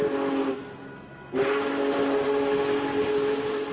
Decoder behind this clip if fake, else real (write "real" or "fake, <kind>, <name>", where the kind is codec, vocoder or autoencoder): real